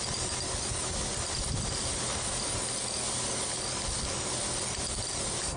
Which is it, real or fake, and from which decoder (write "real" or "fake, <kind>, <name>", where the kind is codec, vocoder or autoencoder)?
real